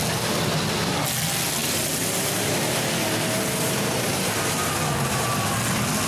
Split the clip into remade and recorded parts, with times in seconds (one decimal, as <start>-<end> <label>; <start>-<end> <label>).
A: 0.0-1.6 recorded; 1.6-5.3 remade; 5.3-6.1 recorded